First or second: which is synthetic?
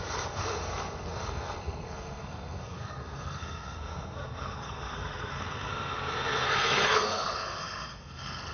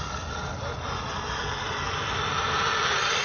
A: first